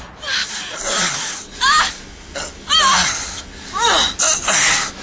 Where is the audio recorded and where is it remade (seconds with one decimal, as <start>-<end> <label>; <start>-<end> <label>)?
0.0-0.4 recorded; 0.4-3.4 remade; 3.4-5.0 recorded